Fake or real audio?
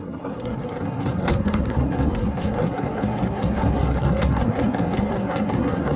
fake